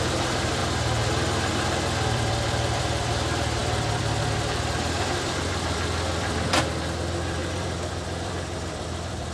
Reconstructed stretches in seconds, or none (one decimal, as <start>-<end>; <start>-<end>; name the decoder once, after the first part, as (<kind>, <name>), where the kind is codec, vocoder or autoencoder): 0.0-0.6 (vocoder, BigVGAN v2); 1.5-9.3